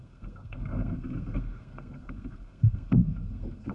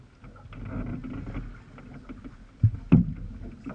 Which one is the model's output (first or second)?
first